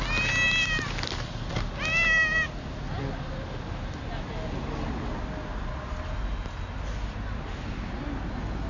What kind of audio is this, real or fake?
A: real